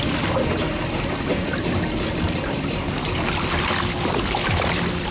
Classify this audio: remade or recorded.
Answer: remade